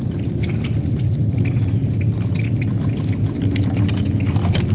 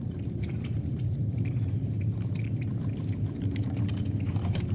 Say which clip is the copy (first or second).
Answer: second